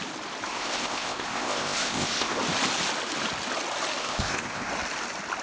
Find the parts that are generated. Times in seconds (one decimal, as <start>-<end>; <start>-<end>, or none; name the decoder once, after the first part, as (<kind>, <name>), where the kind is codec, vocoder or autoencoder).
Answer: 0.5-2.4 (codec, ZipCodec); 4.0-4.7